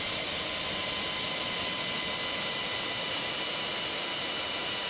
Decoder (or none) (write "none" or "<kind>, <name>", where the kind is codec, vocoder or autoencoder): none